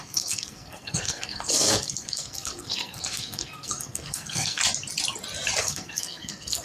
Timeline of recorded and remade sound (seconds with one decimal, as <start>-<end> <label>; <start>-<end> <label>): 0.0-4.6 remade; 4.6-5.6 recorded; 5.6-6.6 remade